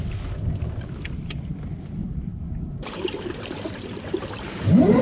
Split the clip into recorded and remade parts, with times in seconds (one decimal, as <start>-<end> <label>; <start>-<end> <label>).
0.0-2.0 recorded; 2.0-5.0 remade